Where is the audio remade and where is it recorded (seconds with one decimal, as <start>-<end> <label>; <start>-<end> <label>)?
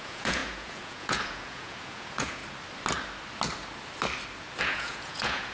0.0-2.4 remade; 2.4-4.6 recorded; 4.6-5.5 remade